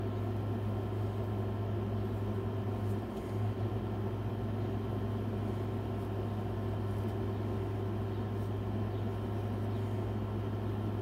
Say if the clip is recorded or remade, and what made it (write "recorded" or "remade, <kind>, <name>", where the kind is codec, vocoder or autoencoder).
recorded